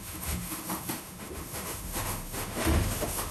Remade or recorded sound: remade